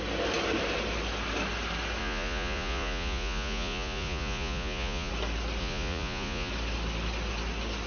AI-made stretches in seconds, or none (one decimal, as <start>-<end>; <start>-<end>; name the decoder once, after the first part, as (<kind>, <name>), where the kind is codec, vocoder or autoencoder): 2.0-5.1 (vocoder, Vocos); 5.6-6.5